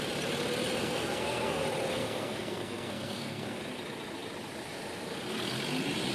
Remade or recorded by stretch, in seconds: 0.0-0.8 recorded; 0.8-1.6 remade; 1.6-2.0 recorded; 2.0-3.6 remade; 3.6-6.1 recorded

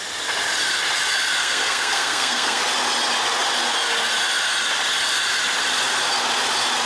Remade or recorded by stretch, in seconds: 0.0-1.4 recorded; 1.4-2.6 remade; 2.6-6.9 recorded

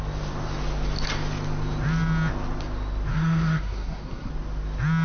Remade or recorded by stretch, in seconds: 0.0-3.1 recorded; 3.1-4.3 remade; 4.3-5.0 recorded

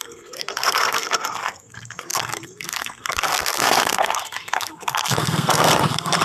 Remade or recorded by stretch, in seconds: 0.0-6.2 remade